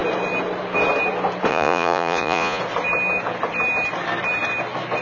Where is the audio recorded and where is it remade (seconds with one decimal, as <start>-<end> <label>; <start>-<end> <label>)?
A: 0.0-1.5 recorded; 1.5-2.6 remade; 2.6-5.0 recorded